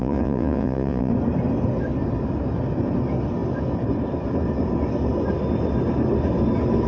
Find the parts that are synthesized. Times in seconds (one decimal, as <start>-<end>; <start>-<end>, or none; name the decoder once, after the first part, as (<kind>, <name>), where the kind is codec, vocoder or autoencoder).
0.0-1.1 (vocoder, Vocos)